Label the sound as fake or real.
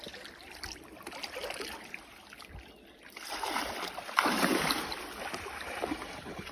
real